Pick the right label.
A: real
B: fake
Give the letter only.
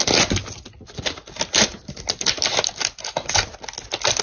A